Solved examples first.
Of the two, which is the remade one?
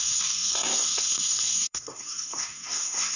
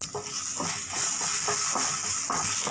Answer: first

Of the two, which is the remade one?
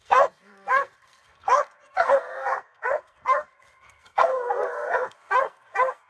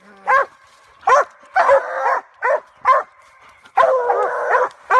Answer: first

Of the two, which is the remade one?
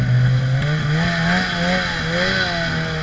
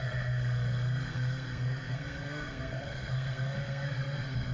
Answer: second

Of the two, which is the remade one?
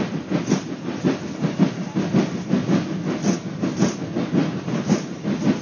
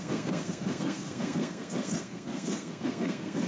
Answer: second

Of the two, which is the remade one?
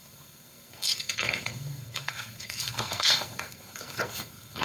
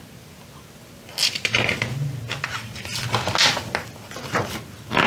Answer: first